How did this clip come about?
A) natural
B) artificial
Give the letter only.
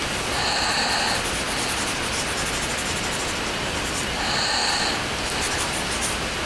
A